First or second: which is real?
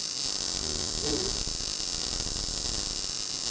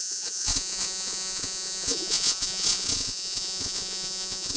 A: first